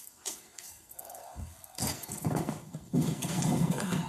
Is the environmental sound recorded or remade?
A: remade